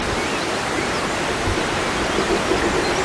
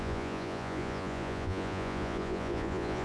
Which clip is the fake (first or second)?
second